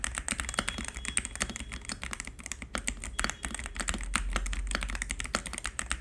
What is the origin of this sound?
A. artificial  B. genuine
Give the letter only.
B